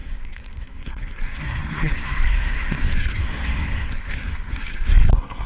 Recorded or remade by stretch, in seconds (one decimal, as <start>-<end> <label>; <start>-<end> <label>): 0.0-5.5 remade